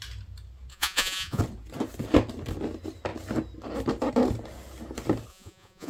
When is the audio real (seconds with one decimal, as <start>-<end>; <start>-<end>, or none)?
0.0-0.7; 1.4-5.3